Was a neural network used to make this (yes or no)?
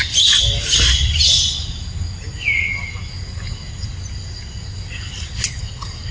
no